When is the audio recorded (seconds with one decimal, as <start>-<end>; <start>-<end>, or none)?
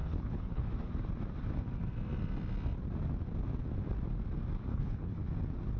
0.7-4.7; 5.3-5.8